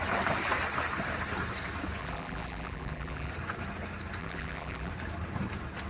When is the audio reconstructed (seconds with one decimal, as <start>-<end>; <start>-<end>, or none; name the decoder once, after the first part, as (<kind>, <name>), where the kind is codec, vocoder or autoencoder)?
2.0-3.3 (vocoder, BigVGAN v2); 4.2-4.9